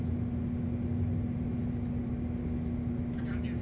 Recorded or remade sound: recorded